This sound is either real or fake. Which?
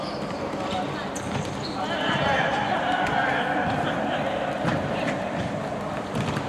fake